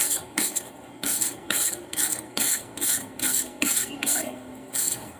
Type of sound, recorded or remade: remade